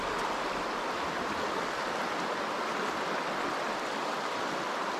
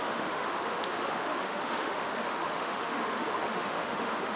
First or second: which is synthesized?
second